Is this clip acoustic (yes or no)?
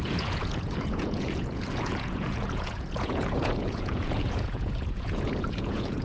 no